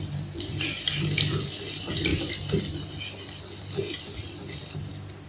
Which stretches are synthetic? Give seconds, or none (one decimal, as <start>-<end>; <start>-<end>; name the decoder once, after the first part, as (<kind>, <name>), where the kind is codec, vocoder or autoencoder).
none